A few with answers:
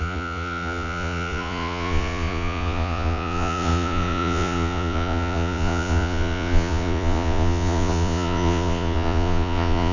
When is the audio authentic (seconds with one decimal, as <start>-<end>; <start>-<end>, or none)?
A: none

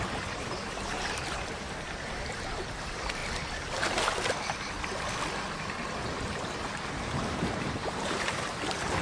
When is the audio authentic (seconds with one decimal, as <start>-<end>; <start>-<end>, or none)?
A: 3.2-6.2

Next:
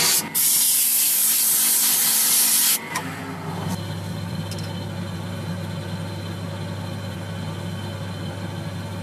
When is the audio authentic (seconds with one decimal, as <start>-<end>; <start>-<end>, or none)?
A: 0.0-0.9; 3.2-3.7; 4.5-9.0

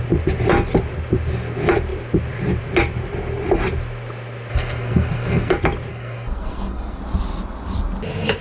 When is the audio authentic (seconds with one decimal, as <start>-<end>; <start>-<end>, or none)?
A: 0.0-4.5; 5.5-5.9; 7.0-8.4